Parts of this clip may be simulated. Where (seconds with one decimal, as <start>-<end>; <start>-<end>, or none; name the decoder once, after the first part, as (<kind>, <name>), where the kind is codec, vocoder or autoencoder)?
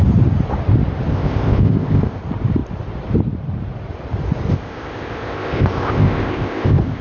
1.1-2.2 (codec, ZipCodec); 4.5-7.0